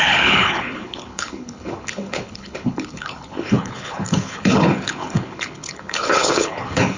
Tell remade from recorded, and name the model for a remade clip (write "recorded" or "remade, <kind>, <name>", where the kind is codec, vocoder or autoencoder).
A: remade, codec, HILCodec